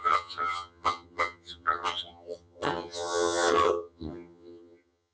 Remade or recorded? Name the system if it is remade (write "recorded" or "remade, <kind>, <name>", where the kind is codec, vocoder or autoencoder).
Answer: remade, vocoder, HiFi-GAN